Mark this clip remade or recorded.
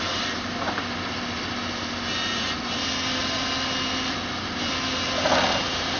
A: recorded